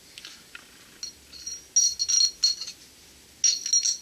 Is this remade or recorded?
recorded